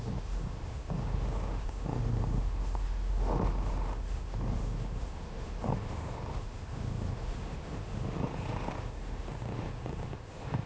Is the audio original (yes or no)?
no